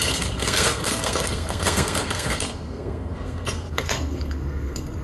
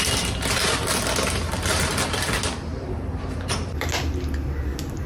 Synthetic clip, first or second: first